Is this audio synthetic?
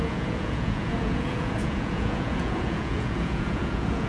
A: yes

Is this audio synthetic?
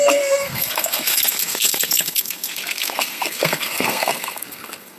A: yes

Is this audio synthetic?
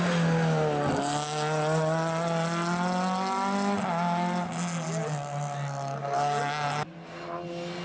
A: no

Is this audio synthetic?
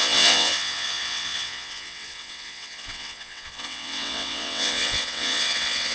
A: yes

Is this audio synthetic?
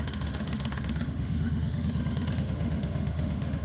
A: yes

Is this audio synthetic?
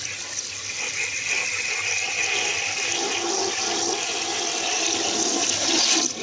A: no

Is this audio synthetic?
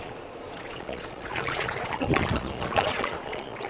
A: yes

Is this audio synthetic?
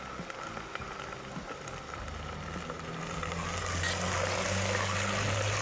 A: no